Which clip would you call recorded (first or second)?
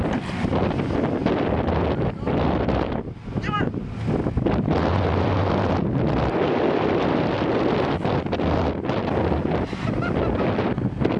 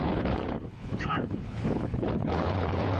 first